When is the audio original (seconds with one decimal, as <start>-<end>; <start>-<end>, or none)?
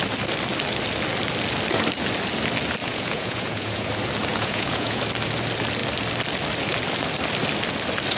0.0-2.8; 3.9-4.3; 5.0-8.2